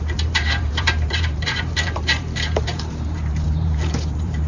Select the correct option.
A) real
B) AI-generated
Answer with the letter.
B